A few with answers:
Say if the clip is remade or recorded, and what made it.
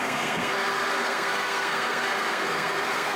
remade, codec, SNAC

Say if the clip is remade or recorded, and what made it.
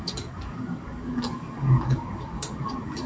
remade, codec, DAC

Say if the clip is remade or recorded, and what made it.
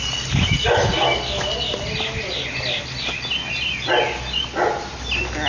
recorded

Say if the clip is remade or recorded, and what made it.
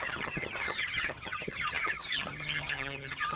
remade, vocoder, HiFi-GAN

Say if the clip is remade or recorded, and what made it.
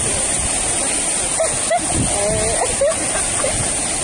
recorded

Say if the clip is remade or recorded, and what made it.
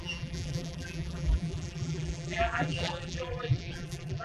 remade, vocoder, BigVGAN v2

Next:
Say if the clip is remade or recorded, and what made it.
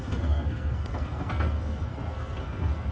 remade, codec, SNAC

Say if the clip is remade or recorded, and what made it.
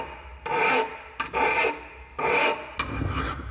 recorded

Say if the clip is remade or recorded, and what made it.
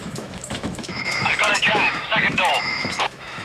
remade, autoencoder, DAC-VAE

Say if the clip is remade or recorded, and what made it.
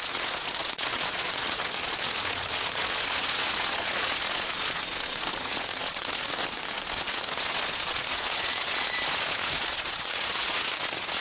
remade, vocoder, Vocos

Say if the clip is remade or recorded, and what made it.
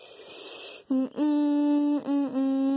recorded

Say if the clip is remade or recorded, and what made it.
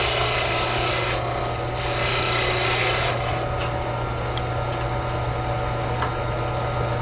recorded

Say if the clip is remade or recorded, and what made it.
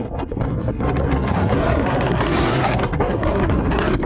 remade, codec, SNAC